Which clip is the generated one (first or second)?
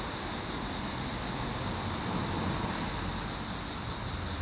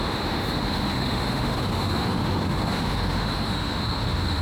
second